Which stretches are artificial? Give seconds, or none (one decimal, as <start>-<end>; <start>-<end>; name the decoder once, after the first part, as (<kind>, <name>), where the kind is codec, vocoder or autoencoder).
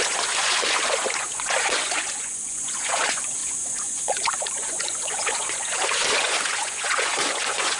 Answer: 0.0-7.8 (vocoder, Vocos)